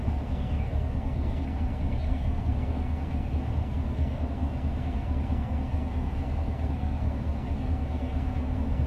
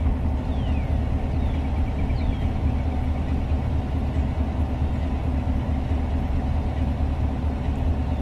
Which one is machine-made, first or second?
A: first